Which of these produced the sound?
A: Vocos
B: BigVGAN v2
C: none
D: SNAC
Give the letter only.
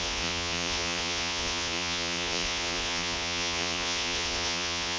A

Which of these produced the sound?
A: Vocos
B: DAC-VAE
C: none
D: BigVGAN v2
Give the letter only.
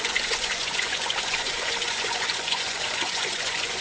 A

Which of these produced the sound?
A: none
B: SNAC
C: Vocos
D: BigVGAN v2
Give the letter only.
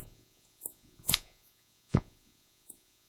C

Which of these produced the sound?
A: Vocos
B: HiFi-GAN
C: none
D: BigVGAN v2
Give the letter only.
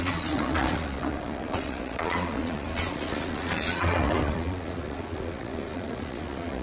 A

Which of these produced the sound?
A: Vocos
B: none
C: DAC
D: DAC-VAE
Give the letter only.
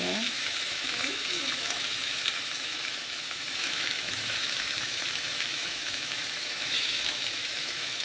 D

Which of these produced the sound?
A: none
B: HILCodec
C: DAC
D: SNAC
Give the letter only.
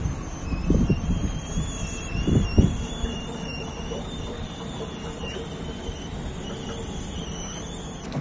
A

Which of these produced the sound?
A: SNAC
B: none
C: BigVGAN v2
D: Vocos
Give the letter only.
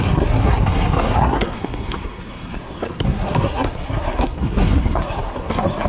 A